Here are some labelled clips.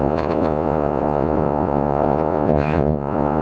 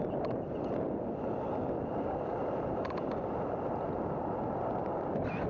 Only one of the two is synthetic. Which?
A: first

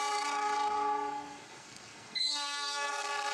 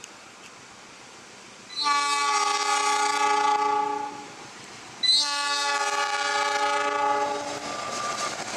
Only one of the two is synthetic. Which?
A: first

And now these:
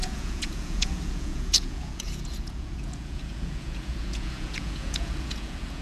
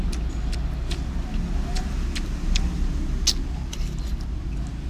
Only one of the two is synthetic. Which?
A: first